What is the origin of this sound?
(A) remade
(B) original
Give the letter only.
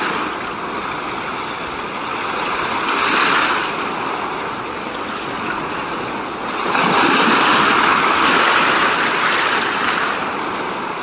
B